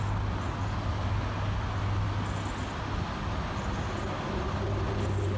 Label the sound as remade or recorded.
recorded